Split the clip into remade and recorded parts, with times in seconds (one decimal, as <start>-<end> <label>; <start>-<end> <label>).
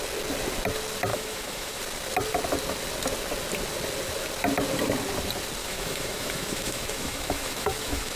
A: 0.0-1.1 recorded; 1.1-1.8 remade; 1.8-5.6 recorded; 5.6-8.2 remade